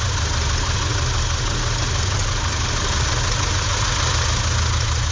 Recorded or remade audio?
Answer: recorded